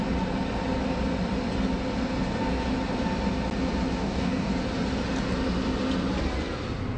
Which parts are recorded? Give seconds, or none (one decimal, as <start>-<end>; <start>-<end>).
0.0-3.9; 4.5-7.0